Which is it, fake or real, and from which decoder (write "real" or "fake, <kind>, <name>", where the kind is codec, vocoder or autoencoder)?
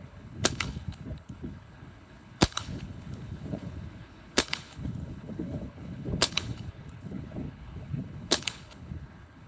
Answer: fake, codec, HILCodec